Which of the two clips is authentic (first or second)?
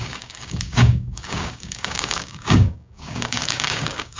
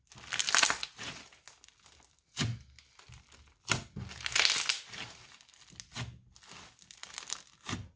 second